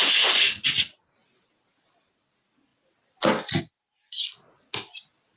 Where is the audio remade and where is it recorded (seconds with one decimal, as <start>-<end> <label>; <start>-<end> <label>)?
0.0-5.4 recorded